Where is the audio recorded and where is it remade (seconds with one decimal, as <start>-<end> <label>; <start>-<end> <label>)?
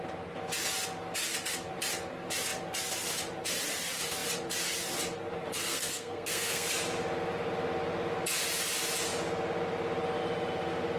0.0-5.5 recorded; 5.5-6.7 remade; 6.7-11.0 recorded